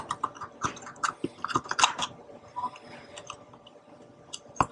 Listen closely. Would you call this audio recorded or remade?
remade